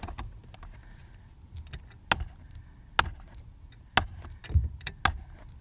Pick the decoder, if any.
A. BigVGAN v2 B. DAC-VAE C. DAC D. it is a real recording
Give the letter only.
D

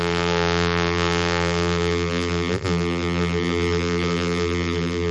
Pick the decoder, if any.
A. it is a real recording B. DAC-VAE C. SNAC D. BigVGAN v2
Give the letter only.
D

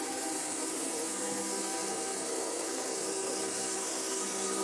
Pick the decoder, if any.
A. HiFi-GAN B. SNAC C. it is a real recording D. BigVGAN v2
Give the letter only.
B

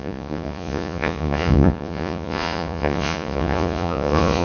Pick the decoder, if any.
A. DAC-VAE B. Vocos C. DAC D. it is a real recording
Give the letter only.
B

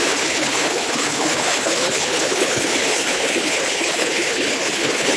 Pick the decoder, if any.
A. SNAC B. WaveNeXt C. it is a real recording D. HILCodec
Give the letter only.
D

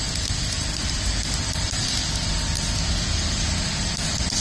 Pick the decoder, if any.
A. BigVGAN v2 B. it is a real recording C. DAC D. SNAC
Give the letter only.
B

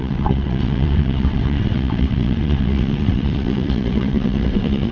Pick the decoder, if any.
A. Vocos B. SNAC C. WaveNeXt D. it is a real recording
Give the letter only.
C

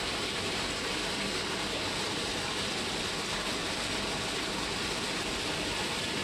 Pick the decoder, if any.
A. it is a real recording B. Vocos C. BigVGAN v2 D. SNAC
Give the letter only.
A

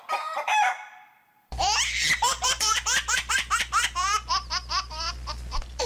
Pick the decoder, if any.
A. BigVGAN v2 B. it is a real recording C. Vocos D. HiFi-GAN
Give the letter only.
A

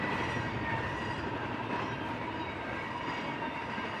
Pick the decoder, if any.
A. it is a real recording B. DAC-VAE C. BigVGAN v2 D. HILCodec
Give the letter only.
A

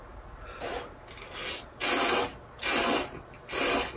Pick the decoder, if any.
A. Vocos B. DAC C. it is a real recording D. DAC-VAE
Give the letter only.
C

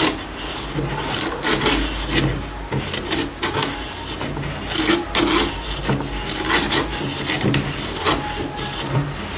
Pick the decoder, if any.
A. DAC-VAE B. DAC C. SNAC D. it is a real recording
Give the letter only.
D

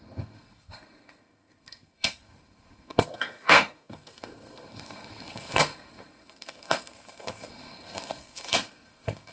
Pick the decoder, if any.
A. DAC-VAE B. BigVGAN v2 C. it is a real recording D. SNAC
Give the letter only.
D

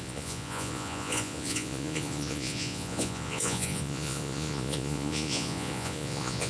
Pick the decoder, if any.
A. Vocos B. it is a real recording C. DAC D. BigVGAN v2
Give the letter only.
A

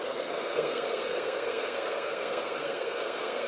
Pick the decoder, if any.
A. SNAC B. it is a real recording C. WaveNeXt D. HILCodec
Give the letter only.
A